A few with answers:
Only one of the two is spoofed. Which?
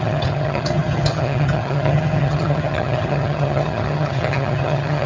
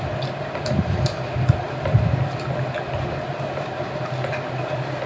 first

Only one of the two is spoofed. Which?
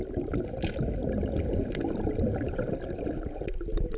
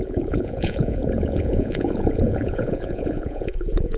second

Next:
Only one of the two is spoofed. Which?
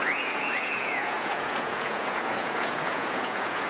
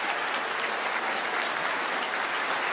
first